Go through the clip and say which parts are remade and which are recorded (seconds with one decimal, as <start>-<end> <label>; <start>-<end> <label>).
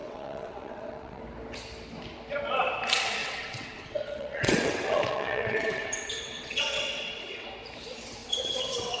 0.0-1.2 remade; 1.2-3.2 recorded; 3.2-7.5 remade; 7.5-8.2 recorded; 8.2-9.0 remade